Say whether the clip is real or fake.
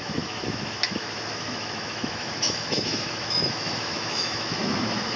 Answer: fake